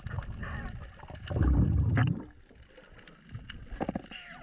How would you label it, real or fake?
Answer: real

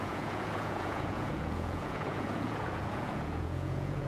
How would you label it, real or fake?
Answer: fake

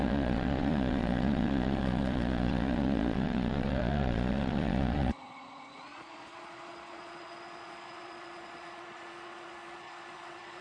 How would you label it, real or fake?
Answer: fake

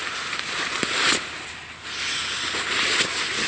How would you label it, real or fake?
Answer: real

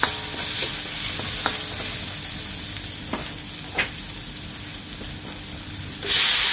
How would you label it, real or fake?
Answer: real